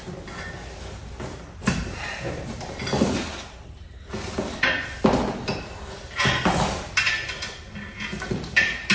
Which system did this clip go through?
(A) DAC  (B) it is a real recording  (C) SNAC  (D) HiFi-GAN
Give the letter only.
B